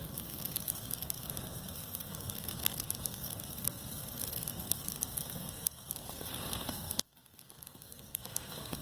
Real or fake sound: fake